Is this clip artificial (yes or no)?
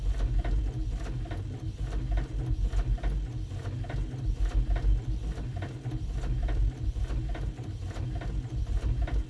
no